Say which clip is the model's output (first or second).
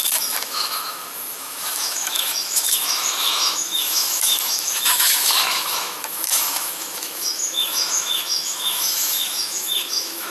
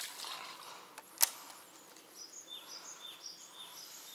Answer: first